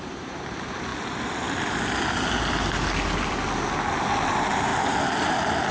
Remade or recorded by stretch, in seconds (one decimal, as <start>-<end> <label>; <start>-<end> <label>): 0.0-0.9 remade; 0.9-4.3 recorded; 4.3-4.7 remade; 4.7-5.7 recorded